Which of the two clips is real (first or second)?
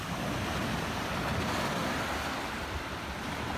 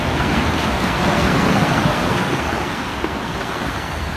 first